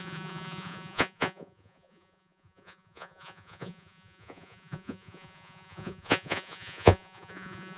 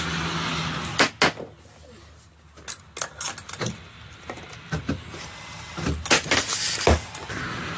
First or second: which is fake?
first